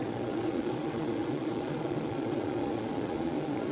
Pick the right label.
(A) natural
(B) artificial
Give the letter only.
B